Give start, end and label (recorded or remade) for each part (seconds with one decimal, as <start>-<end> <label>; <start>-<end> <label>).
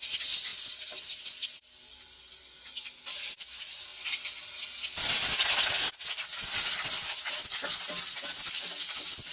0.0-9.3 recorded